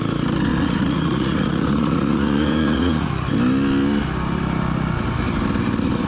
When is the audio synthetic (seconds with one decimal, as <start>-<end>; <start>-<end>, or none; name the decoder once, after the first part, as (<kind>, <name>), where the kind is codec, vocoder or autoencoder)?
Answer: 0.5-3.1 (vocoder, Vocos)